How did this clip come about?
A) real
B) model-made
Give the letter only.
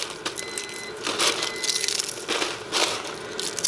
A